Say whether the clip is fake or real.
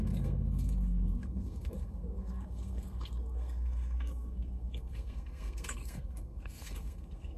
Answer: fake